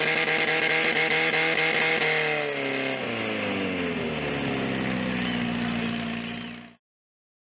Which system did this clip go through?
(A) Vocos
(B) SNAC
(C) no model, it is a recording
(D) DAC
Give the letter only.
C